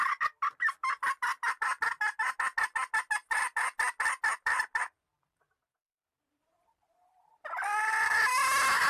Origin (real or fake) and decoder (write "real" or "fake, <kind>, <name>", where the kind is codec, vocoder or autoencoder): real